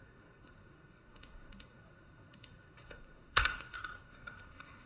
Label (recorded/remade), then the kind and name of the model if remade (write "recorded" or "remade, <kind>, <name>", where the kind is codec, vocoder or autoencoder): remade, codec, SNAC